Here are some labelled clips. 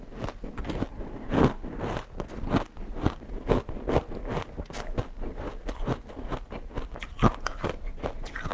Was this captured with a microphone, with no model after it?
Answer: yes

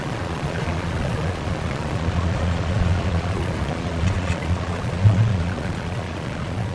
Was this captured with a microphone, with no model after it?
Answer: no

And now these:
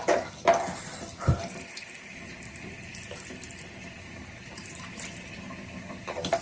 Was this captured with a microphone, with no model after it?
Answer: yes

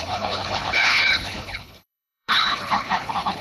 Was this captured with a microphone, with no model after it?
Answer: no